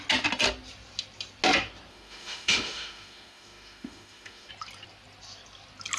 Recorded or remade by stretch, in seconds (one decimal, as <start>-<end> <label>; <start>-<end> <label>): 0.0-1.9 recorded; 1.9-4.5 remade; 4.5-6.0 recorded